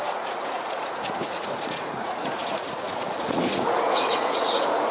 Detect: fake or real fake